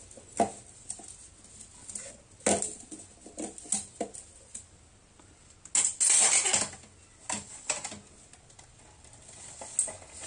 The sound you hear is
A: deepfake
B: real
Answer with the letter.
B